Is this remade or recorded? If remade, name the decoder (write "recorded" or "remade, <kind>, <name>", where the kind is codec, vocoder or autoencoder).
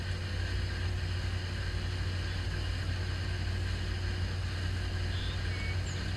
recorded